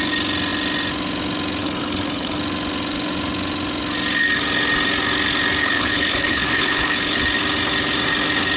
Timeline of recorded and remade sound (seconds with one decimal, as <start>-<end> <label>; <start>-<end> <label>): 0.0-1.6 recorded; 1.6-2.4 remade; 2.4-5.6 recorded; 5.6-7.2 remade; 7.2-8.6 recorded